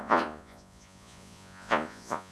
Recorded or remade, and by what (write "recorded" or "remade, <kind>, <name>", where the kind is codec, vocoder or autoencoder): remade, vocoder, Vocos